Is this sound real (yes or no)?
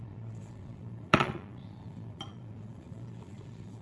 no